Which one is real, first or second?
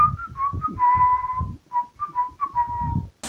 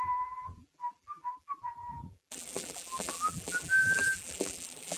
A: first